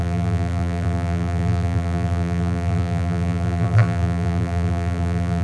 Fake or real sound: fake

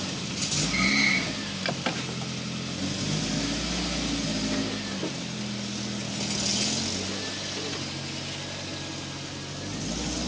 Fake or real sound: real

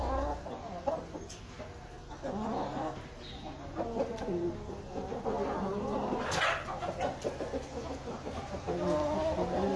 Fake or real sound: real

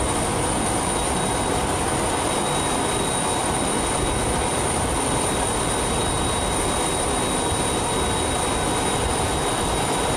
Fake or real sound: real